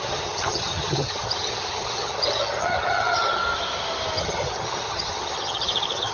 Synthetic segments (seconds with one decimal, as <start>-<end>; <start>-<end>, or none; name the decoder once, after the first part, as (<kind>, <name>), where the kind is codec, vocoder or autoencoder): 0.0-3.4 (vocoder, HiFi-GAN); 4.2-6.1

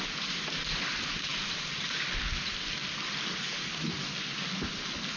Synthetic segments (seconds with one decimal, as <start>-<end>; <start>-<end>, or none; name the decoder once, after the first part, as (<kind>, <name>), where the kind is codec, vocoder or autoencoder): none

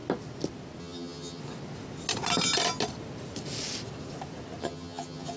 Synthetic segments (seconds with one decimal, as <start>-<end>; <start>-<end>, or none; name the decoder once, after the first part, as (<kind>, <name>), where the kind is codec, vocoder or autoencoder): 0.8-1.4 (vocoder, HiFi-GAN); 4.6-5.4

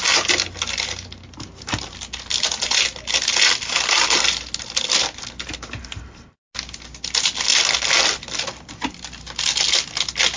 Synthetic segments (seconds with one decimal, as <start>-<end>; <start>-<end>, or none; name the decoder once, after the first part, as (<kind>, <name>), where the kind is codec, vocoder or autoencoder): none

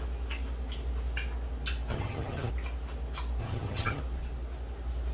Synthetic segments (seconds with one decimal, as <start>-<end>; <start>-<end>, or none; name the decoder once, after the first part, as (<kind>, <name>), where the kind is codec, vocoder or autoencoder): 1.9-2.5 (vocoder, HiFi-GAN); 3.4-4.0

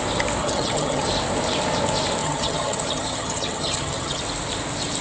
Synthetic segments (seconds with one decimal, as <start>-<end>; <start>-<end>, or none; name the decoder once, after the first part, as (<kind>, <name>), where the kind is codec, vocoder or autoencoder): 0.4-1.1 (vocoder, HiFi-GAN); 2.2-4.2

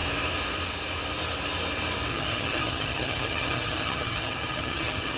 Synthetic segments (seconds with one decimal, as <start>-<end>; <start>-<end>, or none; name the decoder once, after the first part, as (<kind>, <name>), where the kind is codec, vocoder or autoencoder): 2.1-5.2 (vocoder, HiFi-GAN)